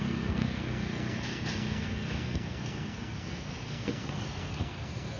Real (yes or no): no